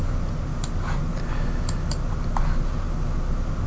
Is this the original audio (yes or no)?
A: yes